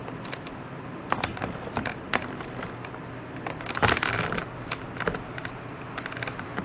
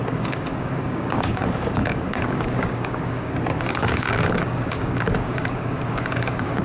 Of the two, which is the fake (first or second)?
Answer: second